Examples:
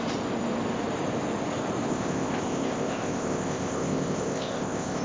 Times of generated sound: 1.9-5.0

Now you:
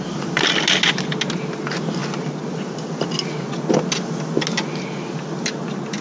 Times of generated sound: none

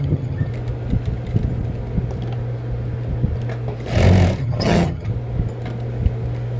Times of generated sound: 0.0-0.5; 4.4-5.1

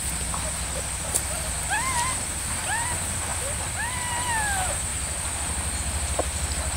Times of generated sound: none

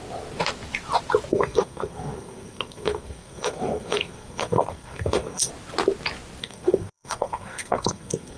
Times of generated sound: 1.3-5.5; 6.4-8.4

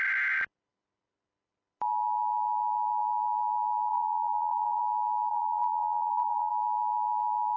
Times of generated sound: 3.9-4.8; 5.3-6.5

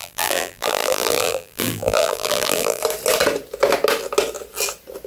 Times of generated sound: 0.0-2.8